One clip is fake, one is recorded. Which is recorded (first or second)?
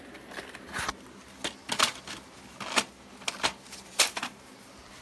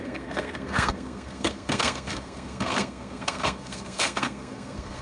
first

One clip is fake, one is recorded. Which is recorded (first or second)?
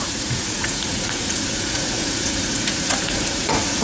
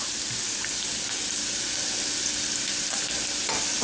second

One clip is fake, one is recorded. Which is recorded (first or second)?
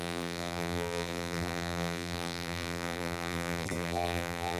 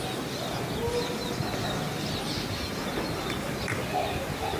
second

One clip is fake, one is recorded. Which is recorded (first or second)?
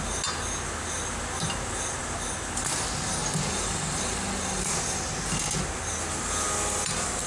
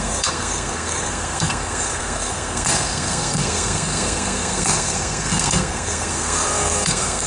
first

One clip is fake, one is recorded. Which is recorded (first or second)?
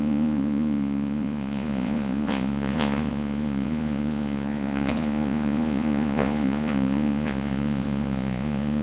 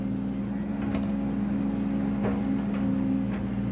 second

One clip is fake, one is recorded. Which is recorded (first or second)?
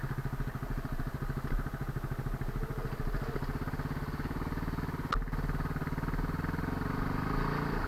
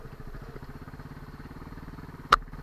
first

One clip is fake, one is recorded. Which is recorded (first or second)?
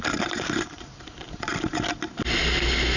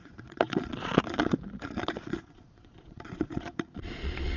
first